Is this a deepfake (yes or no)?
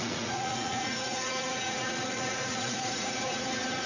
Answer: yes